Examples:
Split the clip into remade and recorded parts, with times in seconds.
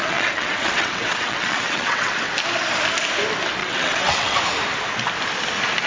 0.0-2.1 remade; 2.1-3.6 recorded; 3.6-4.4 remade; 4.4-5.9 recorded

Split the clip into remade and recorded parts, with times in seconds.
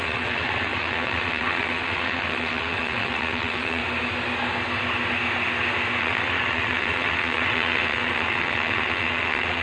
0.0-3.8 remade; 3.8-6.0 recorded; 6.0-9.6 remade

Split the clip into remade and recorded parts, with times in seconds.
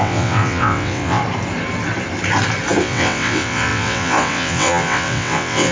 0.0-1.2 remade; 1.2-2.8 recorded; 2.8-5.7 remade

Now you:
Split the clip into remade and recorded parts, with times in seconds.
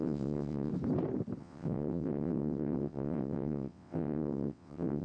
0.0-0.7 remade; 0.7-1.4 recorded; 1.4-5.0 remade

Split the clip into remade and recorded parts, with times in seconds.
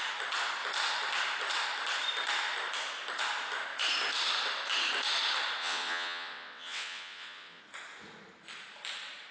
0.0-5.6 recorded; 5.6-7.6 remade; 7.6-9.3 recorded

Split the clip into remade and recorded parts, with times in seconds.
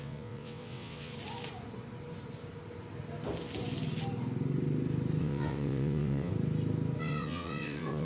0.0-1.1 remade; 1.1-5.2 recorded; 5.2-6.3 remade; 6.3-7.0 recorded; 7.0-8.1 remade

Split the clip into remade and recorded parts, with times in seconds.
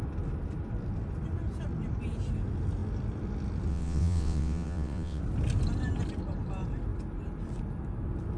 0.0-3.7 recorded; 3.7-5.2 remade; 5.2-8.4 recorded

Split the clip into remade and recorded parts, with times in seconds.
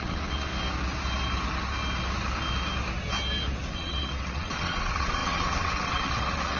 0.0-0.5 remade; 0.5-3.7 recorded; 3.7-6.6 remade